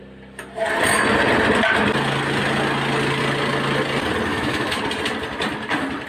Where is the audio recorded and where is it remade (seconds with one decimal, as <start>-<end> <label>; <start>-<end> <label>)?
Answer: 0.0-4.3 recorded; 4.3-4.8 remade; 4.8-6.1 recorded